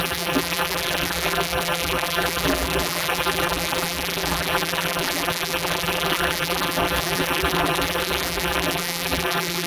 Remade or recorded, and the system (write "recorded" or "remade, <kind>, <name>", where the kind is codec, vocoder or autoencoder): remade, vocoder, BigVGAN v2